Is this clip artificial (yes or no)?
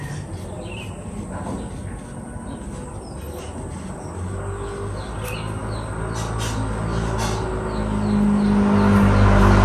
no